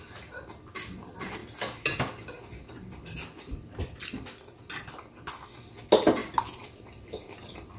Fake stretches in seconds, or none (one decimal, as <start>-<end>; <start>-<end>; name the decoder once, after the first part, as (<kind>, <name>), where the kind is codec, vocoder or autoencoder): none